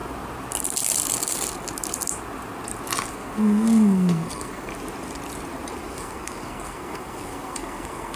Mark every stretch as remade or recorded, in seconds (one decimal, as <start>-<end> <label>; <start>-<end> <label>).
0.0-3.1 recorded; 3.1-4.7 remade; 4.7-5.9 recorded; 5.9-8.2 remade